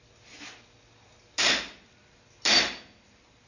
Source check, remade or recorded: recorded